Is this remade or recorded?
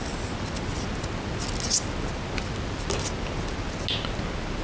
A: recorded